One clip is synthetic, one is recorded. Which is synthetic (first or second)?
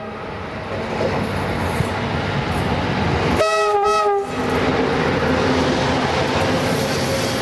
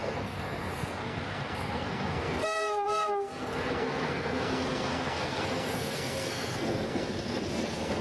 second